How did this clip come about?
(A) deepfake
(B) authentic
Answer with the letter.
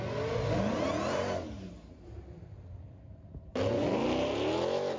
B